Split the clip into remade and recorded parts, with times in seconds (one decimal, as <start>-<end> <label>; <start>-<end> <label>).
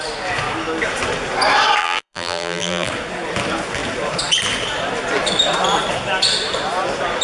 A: 0.0-1.8 recorded; 1.8-2.9 remade; 2.9-7.2 recorded